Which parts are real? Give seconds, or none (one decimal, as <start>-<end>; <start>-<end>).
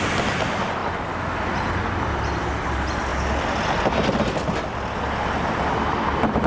0.0-6.5